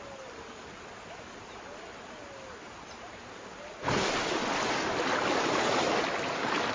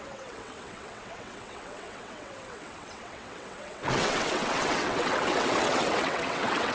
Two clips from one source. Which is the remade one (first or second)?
second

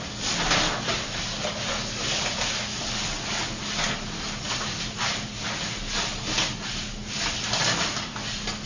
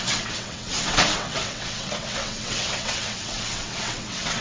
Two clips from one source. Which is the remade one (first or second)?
second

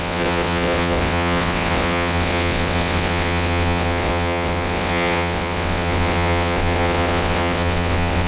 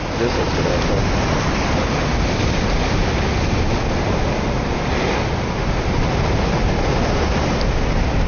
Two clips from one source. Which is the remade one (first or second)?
first